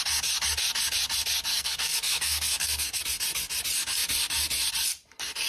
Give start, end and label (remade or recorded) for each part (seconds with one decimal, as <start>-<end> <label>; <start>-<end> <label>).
0.0-1.5 recorded; 1.5-3.0 remade; 3.0-5.5 recorded